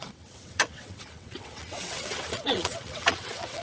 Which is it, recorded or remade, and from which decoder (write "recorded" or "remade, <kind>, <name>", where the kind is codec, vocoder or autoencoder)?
remade, vocoder, WaveNeXt